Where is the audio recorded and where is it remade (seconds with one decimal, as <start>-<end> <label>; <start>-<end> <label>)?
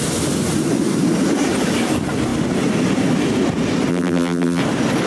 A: 0.0-3.9 recorded; 3.9-4.6 remade; 4.6-5.1 recorded